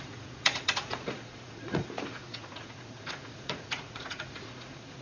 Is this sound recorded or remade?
remade